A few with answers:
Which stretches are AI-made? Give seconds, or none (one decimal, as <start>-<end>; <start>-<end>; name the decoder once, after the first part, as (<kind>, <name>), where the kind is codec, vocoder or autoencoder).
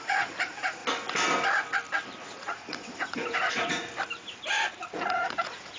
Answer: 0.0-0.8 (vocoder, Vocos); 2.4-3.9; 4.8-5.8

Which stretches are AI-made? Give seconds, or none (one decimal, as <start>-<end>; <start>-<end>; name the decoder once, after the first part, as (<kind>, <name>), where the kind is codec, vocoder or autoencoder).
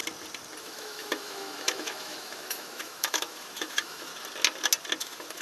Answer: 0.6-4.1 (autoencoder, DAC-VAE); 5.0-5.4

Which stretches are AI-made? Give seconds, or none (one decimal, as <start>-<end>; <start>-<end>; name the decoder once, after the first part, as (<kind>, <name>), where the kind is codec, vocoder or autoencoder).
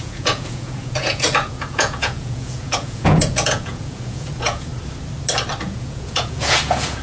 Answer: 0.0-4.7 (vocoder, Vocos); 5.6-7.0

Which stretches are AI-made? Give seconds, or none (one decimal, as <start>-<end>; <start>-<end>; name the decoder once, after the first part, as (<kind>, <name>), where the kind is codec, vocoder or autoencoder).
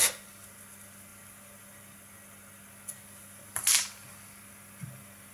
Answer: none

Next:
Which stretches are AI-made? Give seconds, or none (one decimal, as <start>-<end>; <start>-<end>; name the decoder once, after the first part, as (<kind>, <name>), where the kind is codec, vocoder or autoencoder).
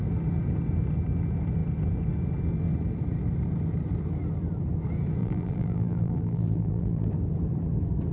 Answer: 5.2-7.1 (vocoder, BigVGAN v2)